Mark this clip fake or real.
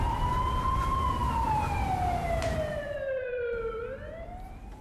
fake